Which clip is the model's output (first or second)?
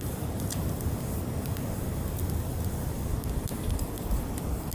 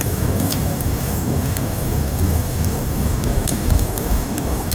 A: second